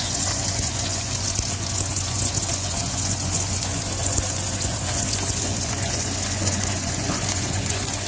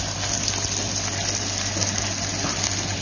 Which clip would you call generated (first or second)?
first